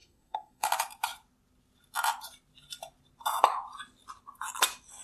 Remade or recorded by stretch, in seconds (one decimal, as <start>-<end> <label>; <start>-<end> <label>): 0.0-0.7 remade; 0.7-5.0 recorded